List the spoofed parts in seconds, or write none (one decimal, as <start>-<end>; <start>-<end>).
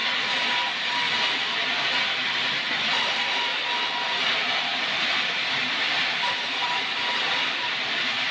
2.0-3.5; 4.7-8.3